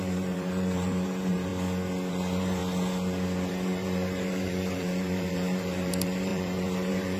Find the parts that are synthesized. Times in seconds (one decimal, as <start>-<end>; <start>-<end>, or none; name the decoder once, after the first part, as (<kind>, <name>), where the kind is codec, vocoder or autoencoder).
0.0-1.5 (vocoder, BigVGAN v2); 2.1-2.6; 3.5-7.2